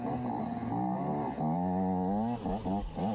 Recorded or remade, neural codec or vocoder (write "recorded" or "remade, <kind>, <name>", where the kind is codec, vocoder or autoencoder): recorded